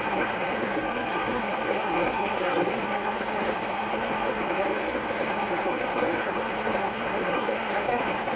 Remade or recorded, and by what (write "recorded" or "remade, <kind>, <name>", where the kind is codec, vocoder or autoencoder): remade, codec, SNAC